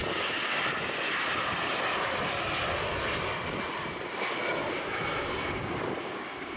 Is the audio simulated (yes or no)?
yes